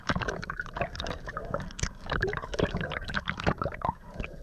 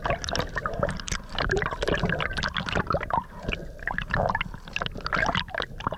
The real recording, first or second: second